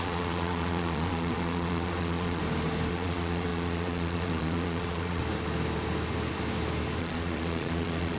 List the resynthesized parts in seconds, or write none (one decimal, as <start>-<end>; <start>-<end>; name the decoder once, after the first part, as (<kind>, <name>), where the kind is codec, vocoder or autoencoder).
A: 0.0-2.4 (vocoder, Vocos); 2.9-5.2; 7.0-8.2